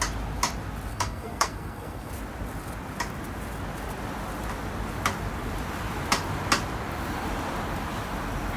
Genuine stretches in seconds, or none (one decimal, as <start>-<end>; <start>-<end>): 0.0-0.9; 2.1-8.6